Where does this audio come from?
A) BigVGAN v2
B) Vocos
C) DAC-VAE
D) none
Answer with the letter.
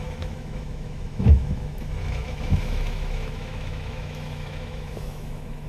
C